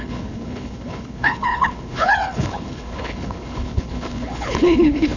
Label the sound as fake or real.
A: fake